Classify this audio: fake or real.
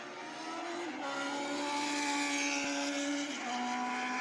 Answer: real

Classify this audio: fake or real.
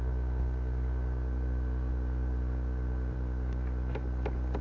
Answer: real